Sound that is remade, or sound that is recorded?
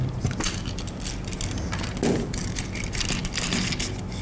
recorded